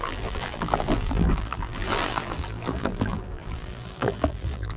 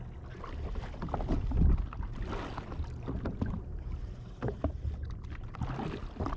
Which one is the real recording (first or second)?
second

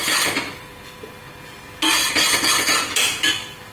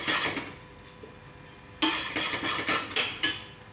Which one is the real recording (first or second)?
first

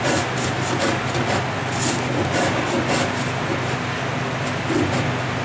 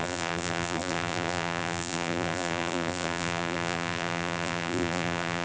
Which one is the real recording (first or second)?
first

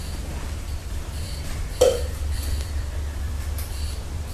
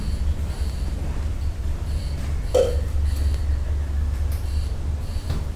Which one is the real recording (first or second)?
second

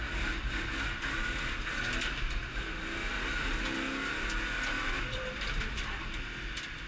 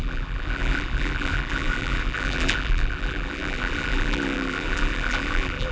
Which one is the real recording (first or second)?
first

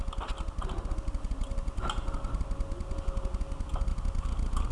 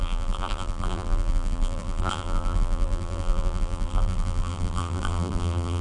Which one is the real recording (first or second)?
first